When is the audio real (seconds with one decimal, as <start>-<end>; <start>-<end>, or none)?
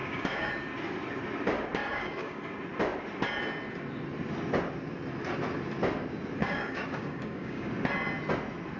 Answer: 0.5-1.8; 2.4-6.4; 7.7-8.8